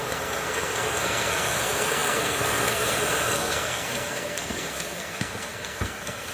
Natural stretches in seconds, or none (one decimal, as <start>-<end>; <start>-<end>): none